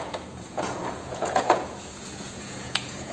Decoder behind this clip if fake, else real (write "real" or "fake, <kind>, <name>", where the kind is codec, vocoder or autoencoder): fake, vocoder, Vocos